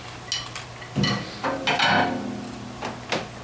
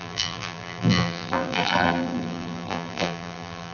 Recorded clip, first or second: first